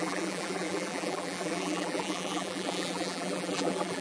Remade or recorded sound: remade